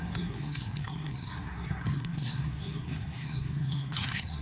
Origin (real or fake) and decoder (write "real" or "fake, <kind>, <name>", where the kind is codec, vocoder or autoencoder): fake, codec, SNAC